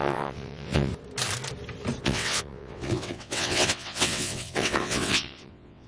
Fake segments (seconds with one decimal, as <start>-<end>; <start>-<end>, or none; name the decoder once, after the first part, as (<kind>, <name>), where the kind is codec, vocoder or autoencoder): 0.0-0.9 (vocoder, WaveNeXt); 2.0-5.9